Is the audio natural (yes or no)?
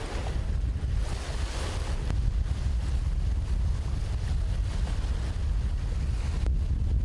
yes